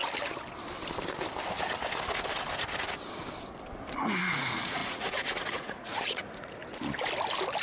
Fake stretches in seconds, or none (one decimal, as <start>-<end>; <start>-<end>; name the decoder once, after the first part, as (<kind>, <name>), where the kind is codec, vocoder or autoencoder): 4.2-6.6 (vocoder, Vocos)